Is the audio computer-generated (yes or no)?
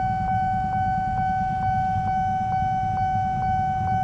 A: no